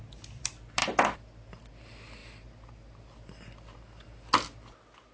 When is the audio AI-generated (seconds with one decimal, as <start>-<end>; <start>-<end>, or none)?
none